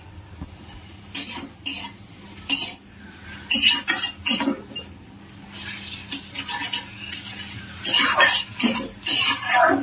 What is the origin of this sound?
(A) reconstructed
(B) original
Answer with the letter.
B